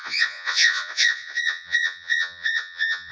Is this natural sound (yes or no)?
no